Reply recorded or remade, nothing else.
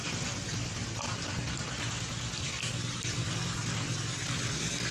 recorded